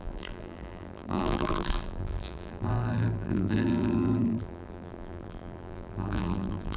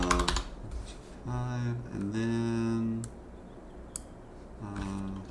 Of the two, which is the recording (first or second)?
second